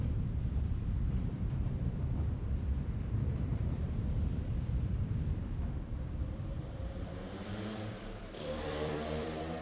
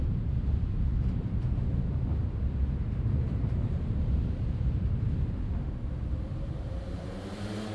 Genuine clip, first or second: second